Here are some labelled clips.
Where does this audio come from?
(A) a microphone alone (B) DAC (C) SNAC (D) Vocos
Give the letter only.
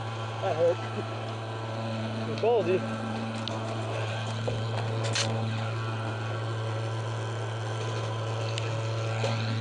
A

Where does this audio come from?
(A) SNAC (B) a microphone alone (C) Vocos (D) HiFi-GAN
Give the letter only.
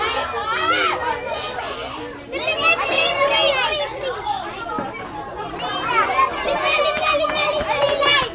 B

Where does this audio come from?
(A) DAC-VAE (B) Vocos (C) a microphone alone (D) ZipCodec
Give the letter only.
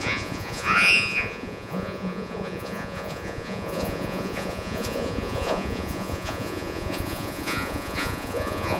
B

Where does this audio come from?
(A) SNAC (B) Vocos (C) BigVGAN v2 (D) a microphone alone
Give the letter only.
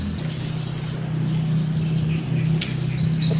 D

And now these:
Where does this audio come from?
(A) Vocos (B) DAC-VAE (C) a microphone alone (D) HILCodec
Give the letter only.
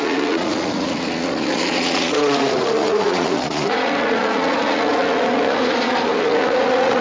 A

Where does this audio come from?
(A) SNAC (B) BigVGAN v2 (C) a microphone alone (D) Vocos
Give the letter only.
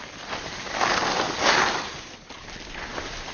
C